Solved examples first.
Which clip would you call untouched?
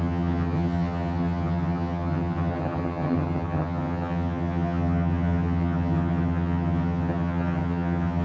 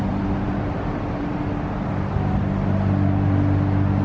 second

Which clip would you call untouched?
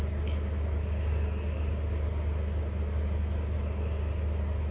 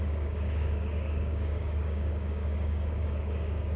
first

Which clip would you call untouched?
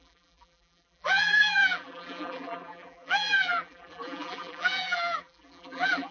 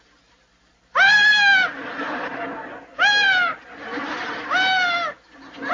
second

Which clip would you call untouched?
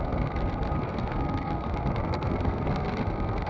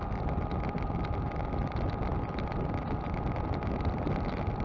second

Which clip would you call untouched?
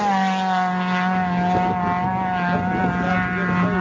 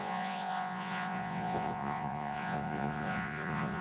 first